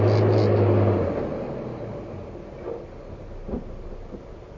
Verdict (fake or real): real